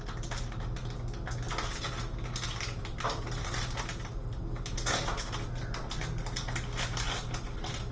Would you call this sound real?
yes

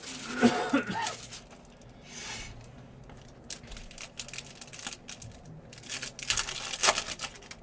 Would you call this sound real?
yes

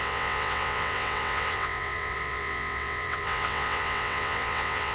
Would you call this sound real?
no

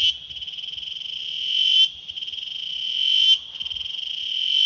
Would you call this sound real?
yes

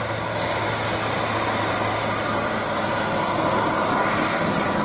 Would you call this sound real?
yes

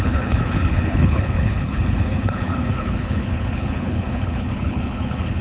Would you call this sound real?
no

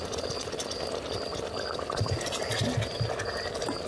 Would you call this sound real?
yes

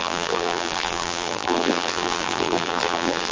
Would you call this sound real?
no